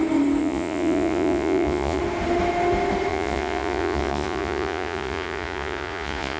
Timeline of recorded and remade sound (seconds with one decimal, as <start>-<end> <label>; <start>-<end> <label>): 0.0-0.4 recorded; 0.4-2.0 remade; 2.0-3.1 recorded; 3.1-6.4 remade